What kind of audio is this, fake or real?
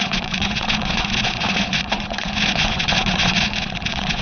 fake